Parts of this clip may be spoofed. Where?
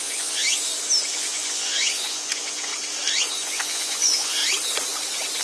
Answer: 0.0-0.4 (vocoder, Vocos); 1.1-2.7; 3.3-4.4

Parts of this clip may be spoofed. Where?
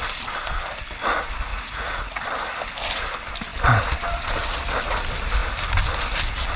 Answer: 1.5-2.2 (vocoder, Vocos)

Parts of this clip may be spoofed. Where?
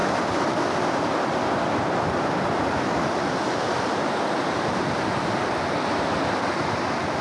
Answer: none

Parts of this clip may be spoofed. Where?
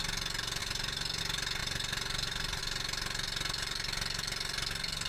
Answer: 0.6-1.2 (vocoder, BigVGAN v2); 1.6-2.6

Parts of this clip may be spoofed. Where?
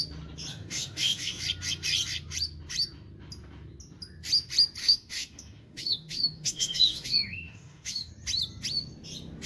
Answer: 0.5-1.4 (autoencoder, DAC-VAE); 4.8-8.1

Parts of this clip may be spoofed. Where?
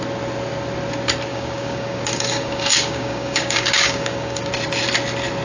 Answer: 1.3-4.5 (codec, DAC)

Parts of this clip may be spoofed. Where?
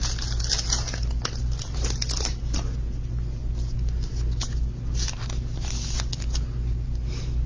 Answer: none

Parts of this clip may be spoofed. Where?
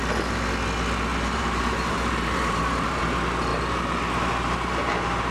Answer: 1.1-3.0 (vocoder, BigVGAN v2)